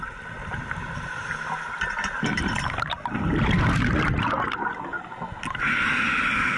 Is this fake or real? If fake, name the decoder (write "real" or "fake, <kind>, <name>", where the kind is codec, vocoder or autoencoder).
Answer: real